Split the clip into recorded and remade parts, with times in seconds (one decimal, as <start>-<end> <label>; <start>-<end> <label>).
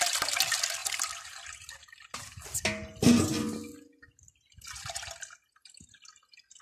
0.0-6.6 recorded